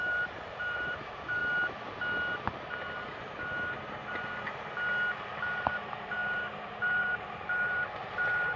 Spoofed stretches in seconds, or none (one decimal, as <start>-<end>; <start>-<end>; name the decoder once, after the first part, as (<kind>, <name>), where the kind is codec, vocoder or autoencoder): 0.0-1.4 (vocoder, BigVGAN v2); 5.3-8.6